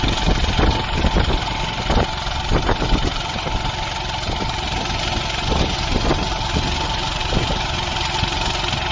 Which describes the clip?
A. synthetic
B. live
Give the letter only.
B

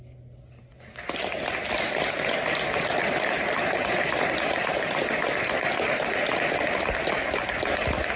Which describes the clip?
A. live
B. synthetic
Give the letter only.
A